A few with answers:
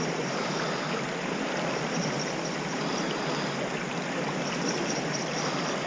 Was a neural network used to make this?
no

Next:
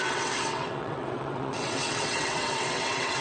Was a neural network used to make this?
yes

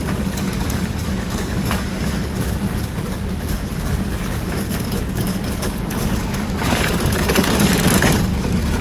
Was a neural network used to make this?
yes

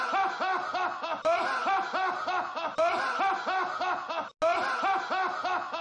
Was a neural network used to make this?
no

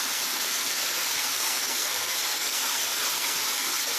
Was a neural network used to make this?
yes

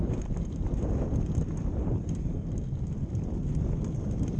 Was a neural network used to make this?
no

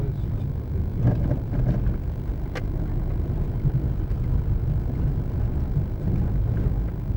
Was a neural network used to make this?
no